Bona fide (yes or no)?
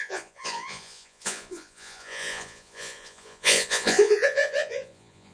no